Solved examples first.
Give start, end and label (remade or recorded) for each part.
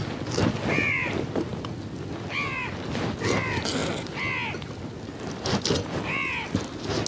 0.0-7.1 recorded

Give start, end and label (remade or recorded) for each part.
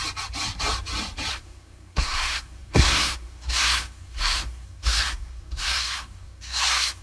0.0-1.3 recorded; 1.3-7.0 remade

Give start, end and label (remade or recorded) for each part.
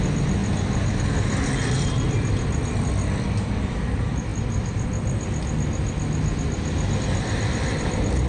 0.0-8.3 recorded